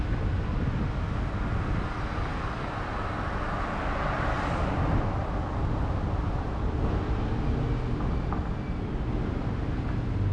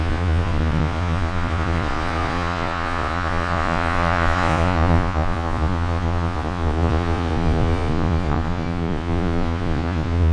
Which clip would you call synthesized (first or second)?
second